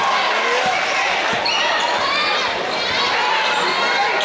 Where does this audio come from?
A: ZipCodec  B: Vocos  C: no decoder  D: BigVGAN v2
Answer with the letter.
C